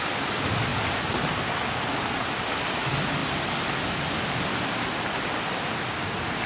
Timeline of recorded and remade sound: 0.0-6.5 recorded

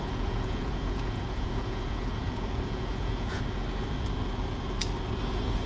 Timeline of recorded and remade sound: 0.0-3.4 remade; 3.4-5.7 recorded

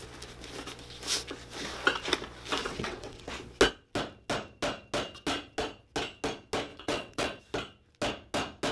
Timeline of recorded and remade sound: 0.0-2.6 recorded; 2.6-3.3 remade; 3.3-6.7 recorded; 6.7-7.4 remade; 7.4-8.7 recorded

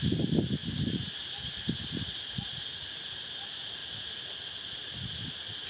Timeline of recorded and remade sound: 0.0-0.6 recorded; 0.6-1.8 remade; 1.8-5.7 recorded

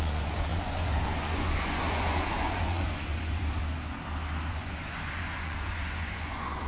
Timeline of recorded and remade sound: 0.0-3.6 remade; 3.6-4.5 recorded; 4.5-6.7 remade